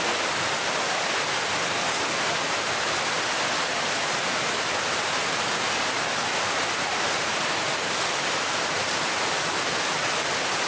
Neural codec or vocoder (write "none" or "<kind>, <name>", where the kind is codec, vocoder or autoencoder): none